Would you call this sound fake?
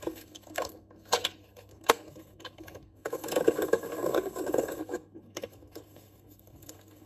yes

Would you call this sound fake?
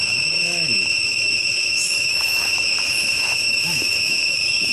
yes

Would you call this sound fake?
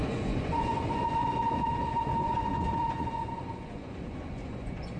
yes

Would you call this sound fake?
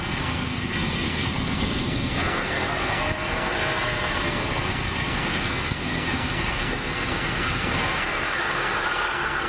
yes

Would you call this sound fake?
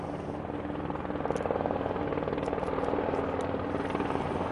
no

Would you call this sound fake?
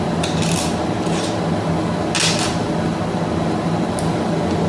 no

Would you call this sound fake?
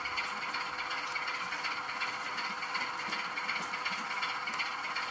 no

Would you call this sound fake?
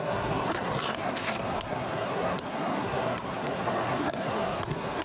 yes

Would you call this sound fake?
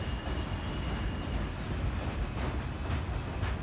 no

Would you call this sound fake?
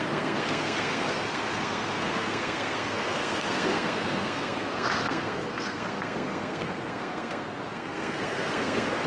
yes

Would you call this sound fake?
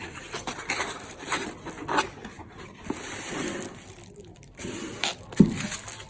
no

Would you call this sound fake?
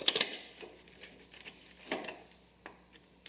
no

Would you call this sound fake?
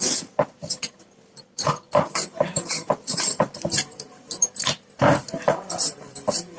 yes